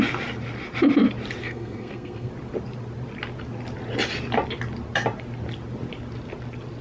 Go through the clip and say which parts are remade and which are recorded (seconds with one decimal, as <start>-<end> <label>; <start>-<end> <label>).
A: 0.0-1.4 recorded; 1.4-2.3 remade; 2.3-6.8 recorded